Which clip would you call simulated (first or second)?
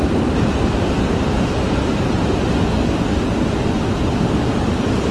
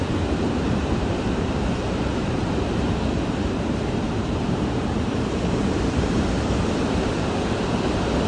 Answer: second